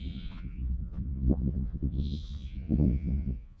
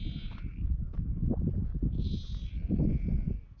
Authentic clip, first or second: second